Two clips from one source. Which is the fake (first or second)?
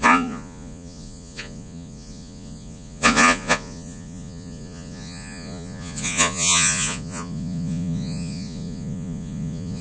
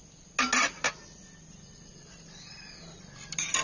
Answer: first